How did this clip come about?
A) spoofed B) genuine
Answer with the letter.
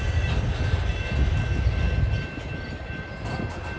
B